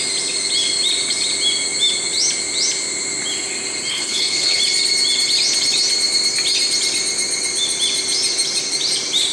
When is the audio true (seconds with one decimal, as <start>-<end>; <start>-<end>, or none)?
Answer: 0.0-3.9; 4.6-9.3